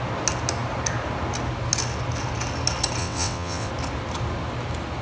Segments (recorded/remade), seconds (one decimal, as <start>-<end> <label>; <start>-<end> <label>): 0.0-3.0 recorded; 3.0-3.7 remade; 3.7-5.0 recorded